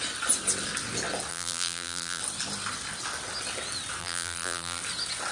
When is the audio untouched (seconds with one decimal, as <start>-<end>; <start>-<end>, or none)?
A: 0.0-1.3; 2.2-4.0; 4.8-5.3